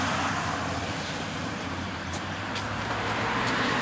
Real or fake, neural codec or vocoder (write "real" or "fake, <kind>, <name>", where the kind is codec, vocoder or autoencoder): fake, vocoder, BigVGAN v2